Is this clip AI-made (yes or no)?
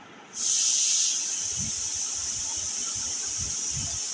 no